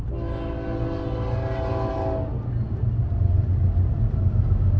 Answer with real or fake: real